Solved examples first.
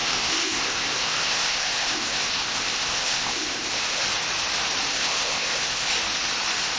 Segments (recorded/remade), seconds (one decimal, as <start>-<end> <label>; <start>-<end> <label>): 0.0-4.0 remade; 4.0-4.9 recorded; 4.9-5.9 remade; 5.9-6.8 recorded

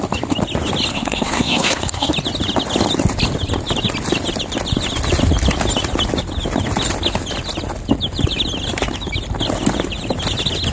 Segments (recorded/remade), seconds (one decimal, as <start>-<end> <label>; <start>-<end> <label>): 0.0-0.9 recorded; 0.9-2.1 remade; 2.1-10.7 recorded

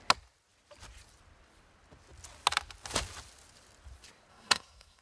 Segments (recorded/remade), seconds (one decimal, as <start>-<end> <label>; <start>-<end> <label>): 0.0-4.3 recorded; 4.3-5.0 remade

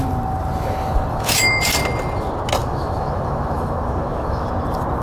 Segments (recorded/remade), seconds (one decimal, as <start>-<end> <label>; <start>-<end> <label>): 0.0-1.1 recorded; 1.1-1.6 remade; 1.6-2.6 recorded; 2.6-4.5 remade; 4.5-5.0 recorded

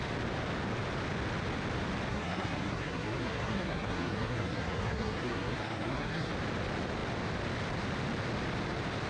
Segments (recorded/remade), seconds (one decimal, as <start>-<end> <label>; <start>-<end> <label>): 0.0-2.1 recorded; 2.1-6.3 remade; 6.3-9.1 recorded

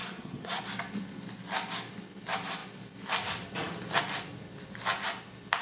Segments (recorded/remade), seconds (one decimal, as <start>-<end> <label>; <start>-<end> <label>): 0.0-0.6 remade; 0.6-5.6 recorded

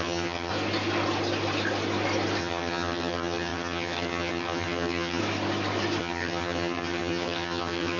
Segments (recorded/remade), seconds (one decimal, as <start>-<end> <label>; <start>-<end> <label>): 0.0-0.5 remade; 0.5-2.4 recorded; 2.4-5.2 remade; 5.2-6.0 recorded; 6.0-8.0 remade

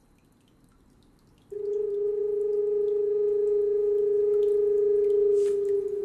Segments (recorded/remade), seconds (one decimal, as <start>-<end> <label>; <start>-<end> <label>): 0.0-6.0 recorded